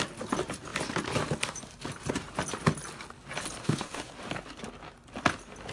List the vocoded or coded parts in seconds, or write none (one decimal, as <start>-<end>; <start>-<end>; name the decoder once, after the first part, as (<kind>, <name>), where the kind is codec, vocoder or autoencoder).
3.6-4.1 (autoencoder, DAC-VAE)

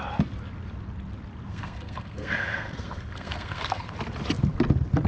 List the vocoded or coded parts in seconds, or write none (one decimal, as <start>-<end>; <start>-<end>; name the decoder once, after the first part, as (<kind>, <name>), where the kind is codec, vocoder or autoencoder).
1.5-3.9 (codec, SNAC)